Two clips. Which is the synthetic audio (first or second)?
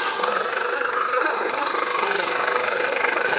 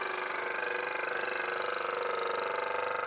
first